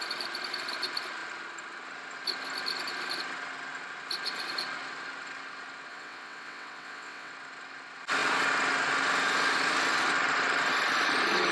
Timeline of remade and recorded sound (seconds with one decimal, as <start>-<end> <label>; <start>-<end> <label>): 0.0-5.9 recorded; 5.9-7.3 remade; 7.3-11.5 recorded